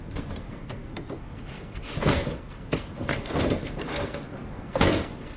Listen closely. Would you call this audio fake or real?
fake